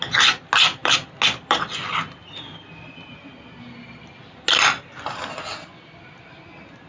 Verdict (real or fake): real